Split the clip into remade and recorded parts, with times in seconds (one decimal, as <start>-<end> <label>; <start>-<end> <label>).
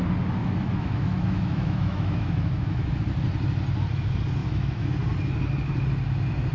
0.0-0.4 recorded; 0.4-3.0 remade; 3.0-4.4 recorded; 4.4-4.9 remade; 4.9-6.5 recorded